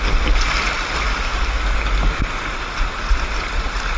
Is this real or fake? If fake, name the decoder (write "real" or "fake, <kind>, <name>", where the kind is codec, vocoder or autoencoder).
real